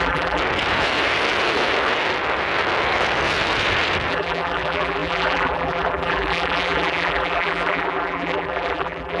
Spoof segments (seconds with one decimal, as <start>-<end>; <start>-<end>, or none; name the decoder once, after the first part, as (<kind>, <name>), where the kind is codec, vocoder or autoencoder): 0.0-0.4 (vocoder, BigVGAN v2); 4.1-9.2